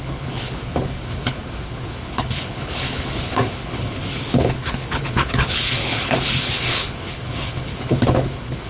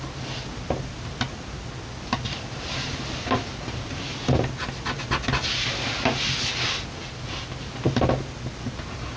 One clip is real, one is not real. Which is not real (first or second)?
first